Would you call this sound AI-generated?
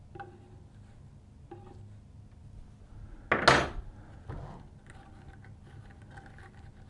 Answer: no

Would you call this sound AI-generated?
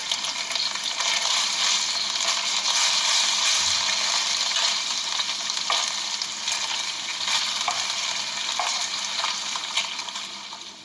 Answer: no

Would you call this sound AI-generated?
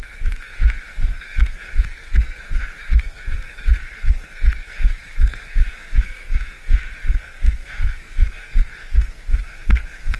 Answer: yes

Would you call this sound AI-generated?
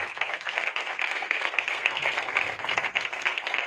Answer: yes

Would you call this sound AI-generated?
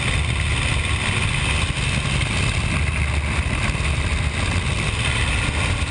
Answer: no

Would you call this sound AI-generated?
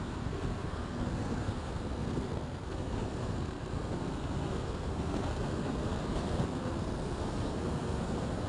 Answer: yes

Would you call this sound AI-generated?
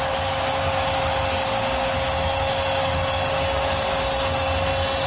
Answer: no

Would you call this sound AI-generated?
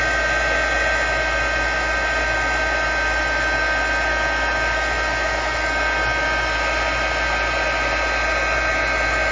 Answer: no